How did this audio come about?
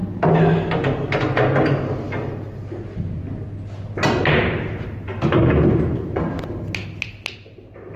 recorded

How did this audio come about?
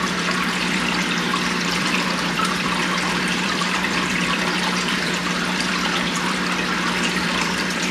remade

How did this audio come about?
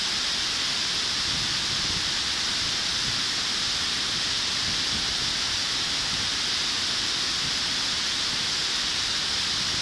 recorded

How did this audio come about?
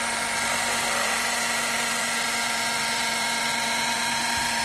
remade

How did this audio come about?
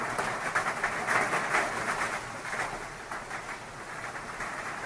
recorded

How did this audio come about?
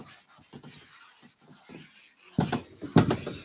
recorded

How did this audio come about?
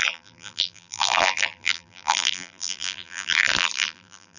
remade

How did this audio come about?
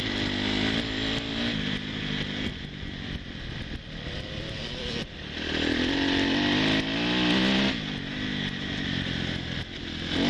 recorded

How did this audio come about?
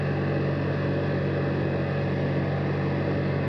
recorded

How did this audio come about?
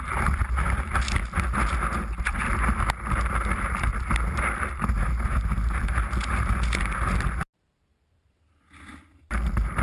recorded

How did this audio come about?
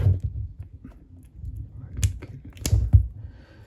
recorded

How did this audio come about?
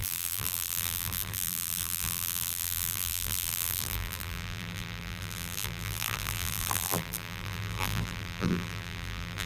remade